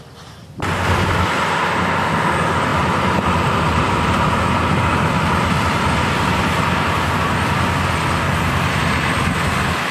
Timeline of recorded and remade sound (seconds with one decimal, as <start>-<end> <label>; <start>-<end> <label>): 0.0-2.7 recorded; 2.7-6.6 remade; 6.6-9.9 recorded